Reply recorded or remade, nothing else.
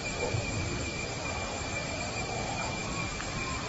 recorded